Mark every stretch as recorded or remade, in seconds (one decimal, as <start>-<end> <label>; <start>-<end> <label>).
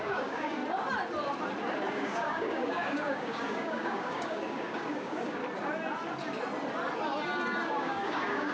0.0-0.6 remade; 0.6-1.9 recorded; 1.9-5.4 remade; 5.4-7.7 recorded; 7.7-8.5 remade